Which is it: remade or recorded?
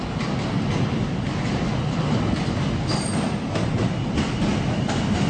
recorded